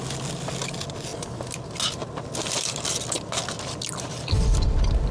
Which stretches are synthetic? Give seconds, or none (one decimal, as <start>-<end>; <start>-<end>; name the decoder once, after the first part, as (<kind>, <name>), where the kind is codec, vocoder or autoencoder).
none